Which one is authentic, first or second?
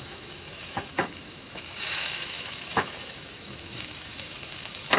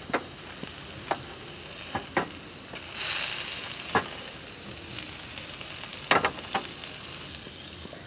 second